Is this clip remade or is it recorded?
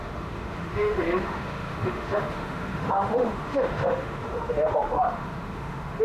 remade